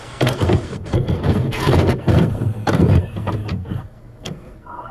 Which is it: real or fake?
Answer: fake